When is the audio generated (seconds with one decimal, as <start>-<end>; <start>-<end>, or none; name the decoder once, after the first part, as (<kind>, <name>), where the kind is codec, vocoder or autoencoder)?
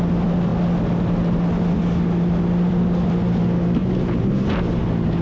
none